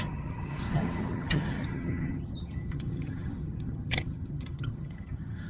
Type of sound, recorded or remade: remade